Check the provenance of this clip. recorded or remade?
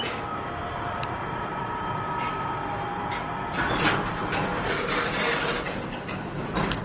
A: remade